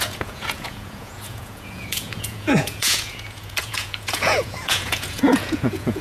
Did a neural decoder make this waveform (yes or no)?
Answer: yes